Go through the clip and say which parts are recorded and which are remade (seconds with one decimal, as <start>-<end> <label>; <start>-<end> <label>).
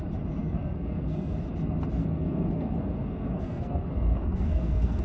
0.0-0.4 recorded; 0.4-1.4 remade; 1.4-2.0 recorded; 2.0-5.0 remade